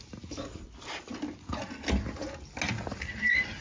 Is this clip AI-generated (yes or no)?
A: no